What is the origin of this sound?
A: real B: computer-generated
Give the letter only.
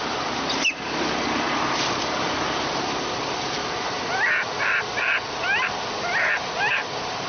A